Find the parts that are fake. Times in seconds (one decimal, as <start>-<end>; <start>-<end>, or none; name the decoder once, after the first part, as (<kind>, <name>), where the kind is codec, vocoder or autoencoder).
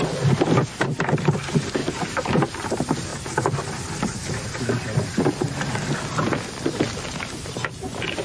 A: 1.8-2.5 (vocoder, BigVGAN v2); 3.1-3.8